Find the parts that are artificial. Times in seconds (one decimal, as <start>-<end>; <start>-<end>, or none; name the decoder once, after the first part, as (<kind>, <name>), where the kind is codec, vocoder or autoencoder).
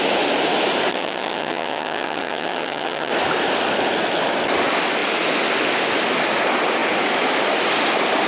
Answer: 0.9-3.1 (vocoder, HiFi-GAN)